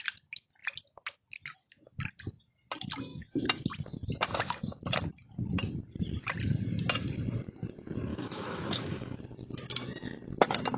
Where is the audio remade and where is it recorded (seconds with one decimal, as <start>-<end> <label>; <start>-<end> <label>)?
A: 0.0-8.1 recorded; 8.1-9.2 remade; 9.2-10.8 recorded